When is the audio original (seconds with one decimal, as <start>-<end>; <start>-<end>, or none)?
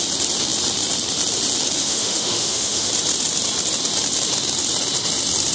0.0-1.8; 2.9-5.5